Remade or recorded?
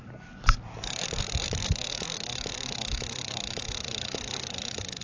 recorded